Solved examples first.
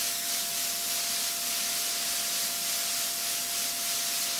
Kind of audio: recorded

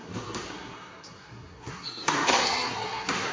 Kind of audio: remade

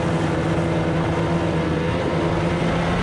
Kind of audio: recorded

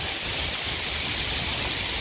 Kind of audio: recorded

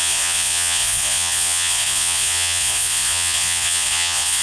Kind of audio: remade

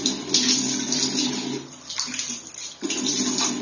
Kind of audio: recorded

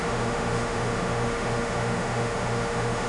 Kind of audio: remade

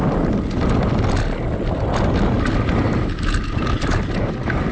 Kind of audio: recorded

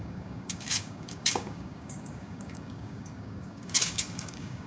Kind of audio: remade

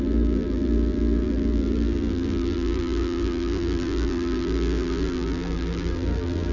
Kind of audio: remade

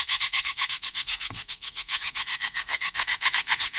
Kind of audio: remade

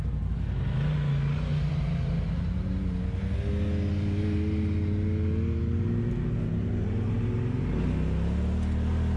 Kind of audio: recorded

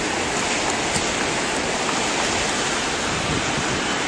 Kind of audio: recorded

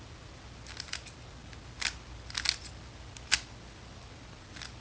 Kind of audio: recorded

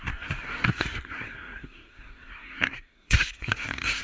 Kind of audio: remade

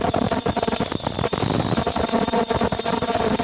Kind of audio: recorded